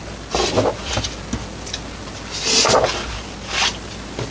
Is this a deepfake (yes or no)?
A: no